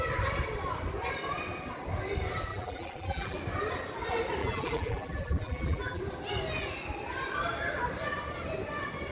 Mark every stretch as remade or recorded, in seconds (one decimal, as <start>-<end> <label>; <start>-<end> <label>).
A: 0.0-2.5 recorded; 2.5-3.4 remade; 3.4-4.4 recorded; 4.4-6.0 remade; 6.0-9.1 recorded